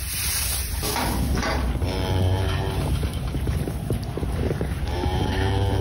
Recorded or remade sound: remade